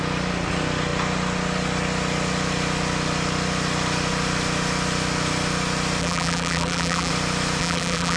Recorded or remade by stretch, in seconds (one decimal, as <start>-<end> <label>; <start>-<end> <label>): 0.0-6.0 recorded; 6.0-7.1 remade; 7.1-7.6 recorded; 7.6-8.2 remade